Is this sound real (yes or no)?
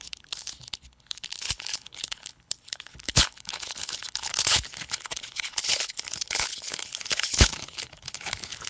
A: no